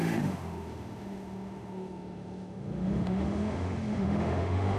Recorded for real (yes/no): no